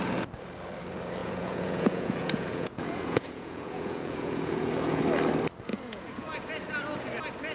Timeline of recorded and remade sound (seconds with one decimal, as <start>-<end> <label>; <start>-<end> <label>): 0.0-1.2 recorded; 1.2-5.0 remade; 5.0-5.7 recorded; 5.7-6.5 remade; 6.5-7.5 recorded